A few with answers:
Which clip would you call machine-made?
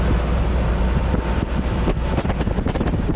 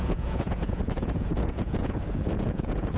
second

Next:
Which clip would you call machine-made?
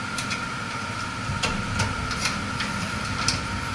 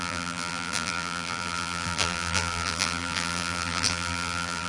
second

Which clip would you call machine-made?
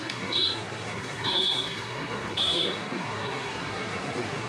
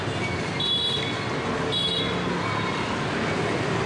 first